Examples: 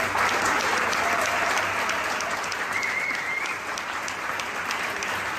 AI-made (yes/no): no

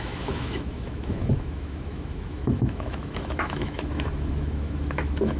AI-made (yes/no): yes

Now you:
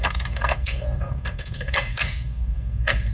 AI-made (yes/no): yes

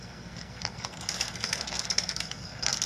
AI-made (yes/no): yes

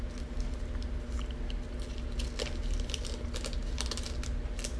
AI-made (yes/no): no